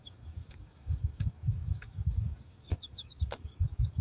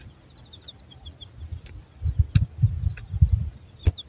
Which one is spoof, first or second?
first